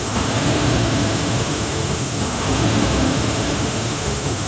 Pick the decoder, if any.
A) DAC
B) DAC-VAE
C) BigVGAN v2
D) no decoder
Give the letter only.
B